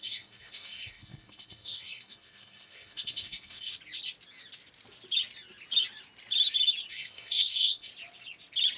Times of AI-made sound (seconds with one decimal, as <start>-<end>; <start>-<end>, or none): 0.0-3.7; 6.9-7.9